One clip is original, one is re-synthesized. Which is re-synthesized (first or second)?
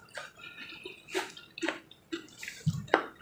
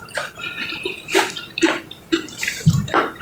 second